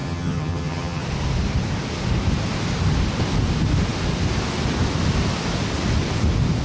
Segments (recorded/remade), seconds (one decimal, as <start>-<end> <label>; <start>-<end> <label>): 0.0-1.0 remade; 1.0-6.6 recorded